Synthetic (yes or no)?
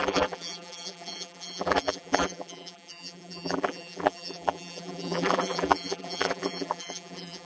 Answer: yes